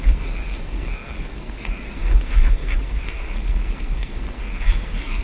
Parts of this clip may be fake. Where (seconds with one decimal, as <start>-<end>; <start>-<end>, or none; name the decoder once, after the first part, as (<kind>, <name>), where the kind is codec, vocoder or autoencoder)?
0.0-5.2 (codec, SNAC)